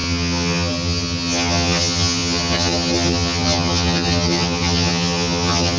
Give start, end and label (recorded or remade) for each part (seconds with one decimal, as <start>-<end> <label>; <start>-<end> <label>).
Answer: 0.0-5.8 remade